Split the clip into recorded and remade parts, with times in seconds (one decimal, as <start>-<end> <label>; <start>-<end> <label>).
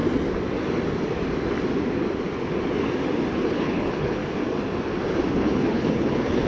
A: 0.0-3.3 recorded; 3.3-4.2 remade; 4.2-5.3 recorded; 5.3-6.5 remade